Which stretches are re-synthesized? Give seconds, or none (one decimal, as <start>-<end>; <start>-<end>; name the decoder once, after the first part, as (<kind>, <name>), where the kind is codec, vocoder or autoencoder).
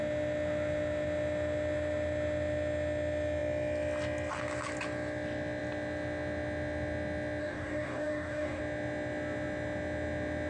7.4-8.6 (codec, DAC)